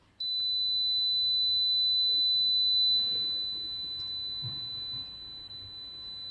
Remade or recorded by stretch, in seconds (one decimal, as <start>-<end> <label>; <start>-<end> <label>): 0.0-6.3 recorded